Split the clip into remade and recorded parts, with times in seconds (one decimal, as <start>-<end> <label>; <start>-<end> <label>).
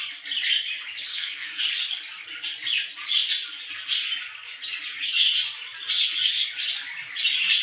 0.0-1.1 recorded; 1.1-1.6 remade; 1.6-7.6 recorded